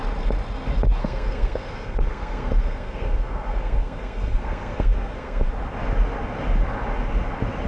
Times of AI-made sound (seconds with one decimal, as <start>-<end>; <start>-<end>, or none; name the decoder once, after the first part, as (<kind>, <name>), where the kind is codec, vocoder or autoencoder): 1.0-5.5 (codec, SNAC)